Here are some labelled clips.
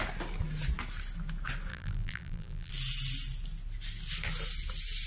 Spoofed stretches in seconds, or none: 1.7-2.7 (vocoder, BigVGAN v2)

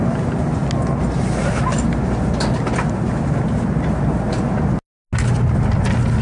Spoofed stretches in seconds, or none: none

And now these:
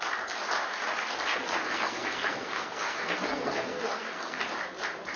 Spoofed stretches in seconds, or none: 1.3-4.4 (codec, SNAC)

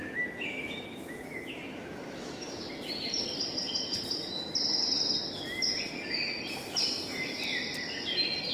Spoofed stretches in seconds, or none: 0.0-2.7 (autoencoder, DAC-VAE)

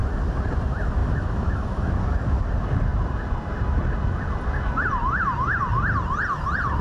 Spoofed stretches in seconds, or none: 1.0-1.9 (autoencoder, DAC-VAE)

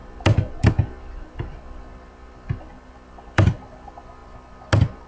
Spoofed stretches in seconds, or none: 3.1-4.2 (vocoder, BigVGAN v2)

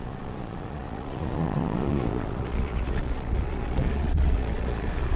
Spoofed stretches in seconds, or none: 0.0-5.2 (vocoder, Vocos)